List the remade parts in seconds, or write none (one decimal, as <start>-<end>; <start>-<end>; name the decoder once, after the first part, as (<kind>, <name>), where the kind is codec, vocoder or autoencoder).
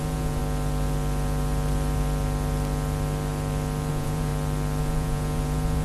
0.0-0.4 (vocoder, Vocos); 3.9-4.3; 4.8-5.8